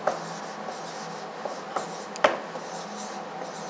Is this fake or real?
real